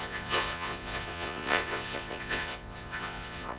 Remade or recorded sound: remade